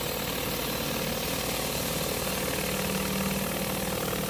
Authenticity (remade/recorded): recorded